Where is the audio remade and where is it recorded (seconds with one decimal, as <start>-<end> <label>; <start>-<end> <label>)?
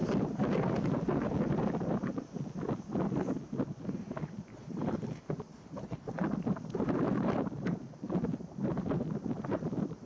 0.0-4.5 recorded; 4.5-5.1 remade; 5.1-5.5 recorded; 5.5-6.2 remade; 6.2-10.1 recorded